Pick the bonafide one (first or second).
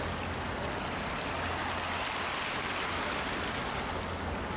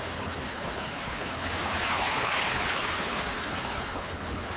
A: first